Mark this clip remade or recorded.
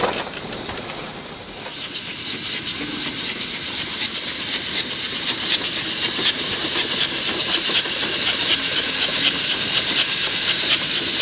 remade